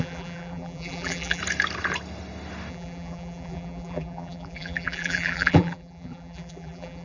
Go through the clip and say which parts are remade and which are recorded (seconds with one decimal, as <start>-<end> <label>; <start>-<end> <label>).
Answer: 0.0-1.4 remade; 1.4-2.7 recorded; 2.7-7.0 remade